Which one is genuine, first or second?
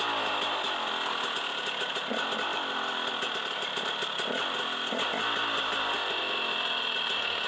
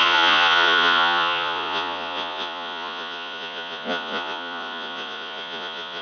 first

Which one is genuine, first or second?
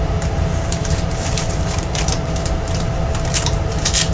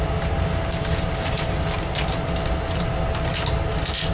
second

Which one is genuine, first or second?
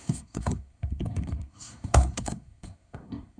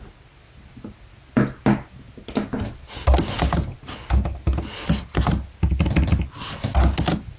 second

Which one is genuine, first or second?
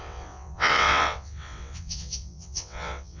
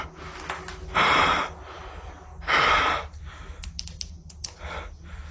second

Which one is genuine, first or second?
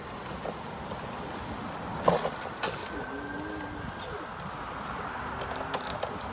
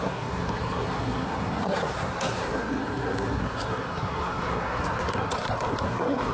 first